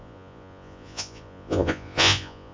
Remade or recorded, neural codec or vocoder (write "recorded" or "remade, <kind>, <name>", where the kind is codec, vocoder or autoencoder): remade, vocoder, Vocos